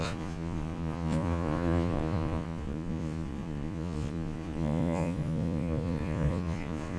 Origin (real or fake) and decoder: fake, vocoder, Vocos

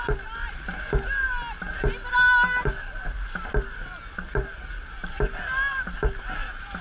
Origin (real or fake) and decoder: real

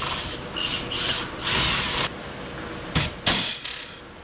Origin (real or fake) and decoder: real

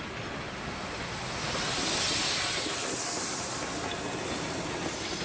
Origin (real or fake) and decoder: real